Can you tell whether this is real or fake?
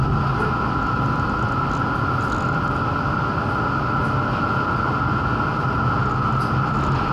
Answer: real